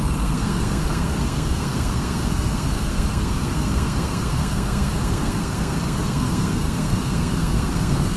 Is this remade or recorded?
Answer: remade